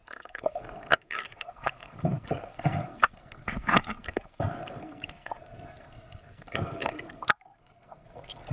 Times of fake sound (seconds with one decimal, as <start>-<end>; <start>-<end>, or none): 0.0-8.5